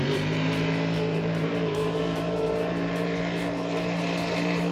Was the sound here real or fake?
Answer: fake